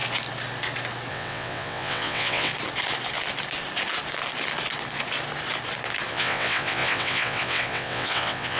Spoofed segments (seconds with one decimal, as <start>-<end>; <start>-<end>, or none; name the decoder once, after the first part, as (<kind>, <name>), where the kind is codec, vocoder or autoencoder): 1.1-2.5 (vocoder, WaveNeXt); 6.1-8.6